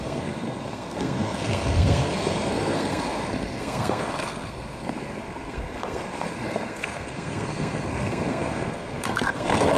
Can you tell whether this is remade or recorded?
remade